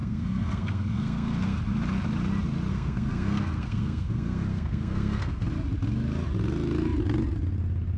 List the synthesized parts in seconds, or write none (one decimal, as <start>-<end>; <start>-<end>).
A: 0.0-1.6; 2.7-5.5